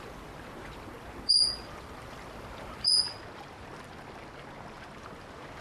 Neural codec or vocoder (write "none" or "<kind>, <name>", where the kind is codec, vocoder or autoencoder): none